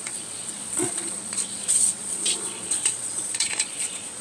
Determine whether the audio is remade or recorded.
remade